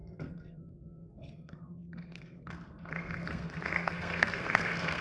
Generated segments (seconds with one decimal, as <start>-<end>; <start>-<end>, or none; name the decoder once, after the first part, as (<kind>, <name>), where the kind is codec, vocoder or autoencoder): 0.0-5.0 (codec, SNAC)